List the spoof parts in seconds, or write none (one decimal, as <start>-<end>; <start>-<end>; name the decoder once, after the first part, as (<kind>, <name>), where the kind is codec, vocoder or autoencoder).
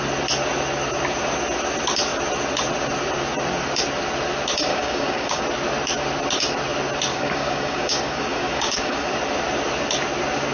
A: 4.7-5.4 (codec, DAC); 7.1-9.1